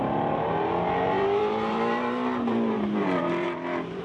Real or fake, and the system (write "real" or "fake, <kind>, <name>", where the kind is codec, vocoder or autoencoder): fake, vocoder, BigVGAN v2